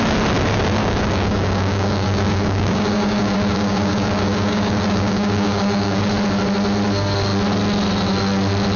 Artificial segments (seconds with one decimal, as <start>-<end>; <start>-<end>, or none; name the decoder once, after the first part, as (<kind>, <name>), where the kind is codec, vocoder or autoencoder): 0.8-6.0 (codec, DAC)